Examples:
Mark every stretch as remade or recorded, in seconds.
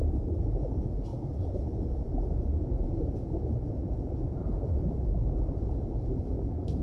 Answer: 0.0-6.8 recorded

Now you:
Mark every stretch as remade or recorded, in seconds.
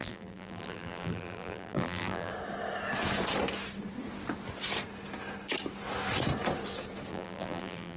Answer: 0.0-2.3 remade; 2.3-7.1 recorded; 7.1-8.0 remade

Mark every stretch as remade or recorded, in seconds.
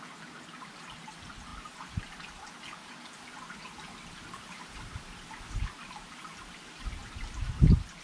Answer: 0.0-1.5 recorded; 1.5-2.0 remade; 2.0-8.0 recorded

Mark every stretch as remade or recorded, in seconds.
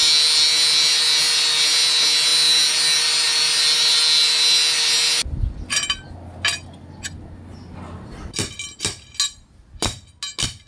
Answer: 0.0-10.7 recorded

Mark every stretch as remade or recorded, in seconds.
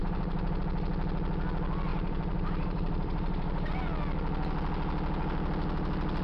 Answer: 0.0-0.6 remade; 0.6-1.9 recorded; 1.9-3.7 remade; 3.7-6.2 recorded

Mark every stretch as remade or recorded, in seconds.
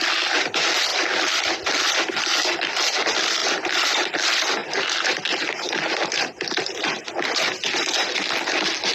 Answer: 0.0-0.9 recorded; 0.9-1.9 remade; 1.9-4.6 recorded; 4.6-6.2 remade; 6.2-8.9 recorded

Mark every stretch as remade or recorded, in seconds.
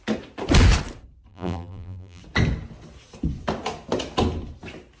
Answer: 0.0-1.3 recorded; 1.3-2.2 remade; 2.2-5.0 recorded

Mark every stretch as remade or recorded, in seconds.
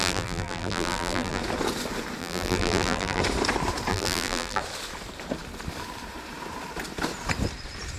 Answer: 0.0-1.4 remade; 1.4-2.2 recorded; 2.2-3.2 remade; 3.2-3.9 recorded; 3.9-4.6 remade; 4.6-8.0 recorded